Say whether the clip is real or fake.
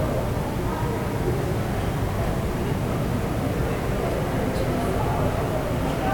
real